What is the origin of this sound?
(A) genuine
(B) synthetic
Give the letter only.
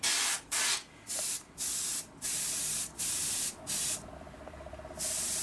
B